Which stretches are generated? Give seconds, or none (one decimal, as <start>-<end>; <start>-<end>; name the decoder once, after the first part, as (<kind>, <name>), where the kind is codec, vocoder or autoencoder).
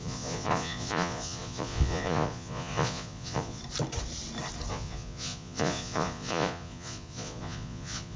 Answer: 0.0-3.6 (vocoder, Vocos); 4.7-8.2